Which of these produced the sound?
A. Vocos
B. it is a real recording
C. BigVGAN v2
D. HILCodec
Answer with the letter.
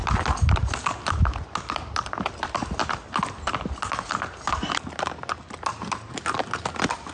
B